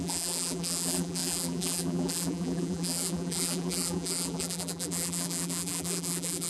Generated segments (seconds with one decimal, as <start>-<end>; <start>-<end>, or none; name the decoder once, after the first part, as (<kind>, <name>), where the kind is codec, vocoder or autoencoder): 0.0-6.5 (vocoder, BigVGAN v2)